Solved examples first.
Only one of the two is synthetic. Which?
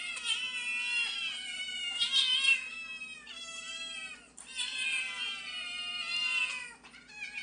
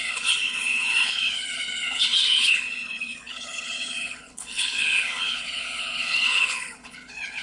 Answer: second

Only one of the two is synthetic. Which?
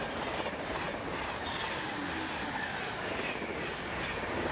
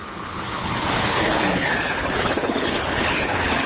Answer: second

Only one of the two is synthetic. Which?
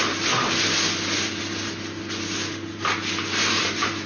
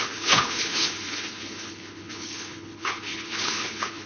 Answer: second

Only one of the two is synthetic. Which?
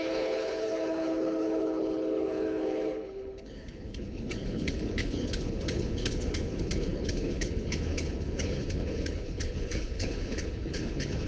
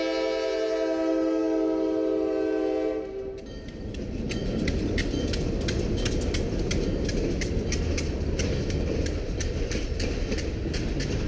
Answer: first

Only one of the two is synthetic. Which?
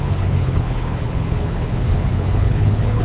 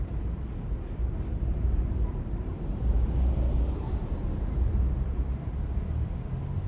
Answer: first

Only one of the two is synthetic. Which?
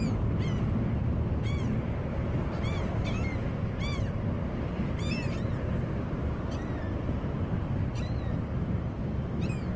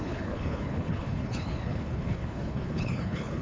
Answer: second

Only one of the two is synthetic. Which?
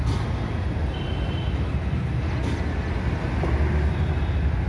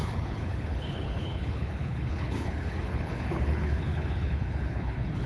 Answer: second